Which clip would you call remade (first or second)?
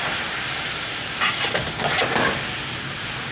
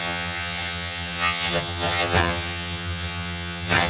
second